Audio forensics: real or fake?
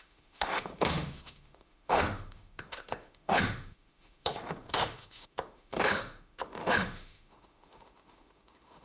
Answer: fake